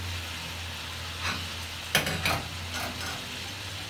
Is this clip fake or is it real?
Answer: real